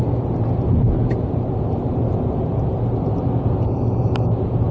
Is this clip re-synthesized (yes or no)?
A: no